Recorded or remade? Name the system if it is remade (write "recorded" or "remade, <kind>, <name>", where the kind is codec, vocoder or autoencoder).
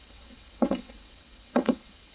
remade, vocoder, WaveNeXt